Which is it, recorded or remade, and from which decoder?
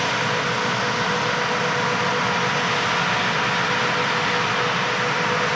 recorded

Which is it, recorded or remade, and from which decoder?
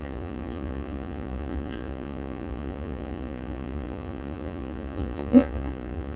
remade, vocoder, Vocos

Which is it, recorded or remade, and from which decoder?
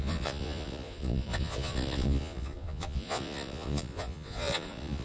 remade, vocoder, Vocos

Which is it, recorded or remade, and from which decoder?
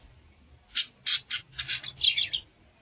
recorded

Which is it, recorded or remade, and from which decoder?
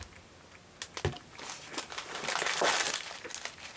recorded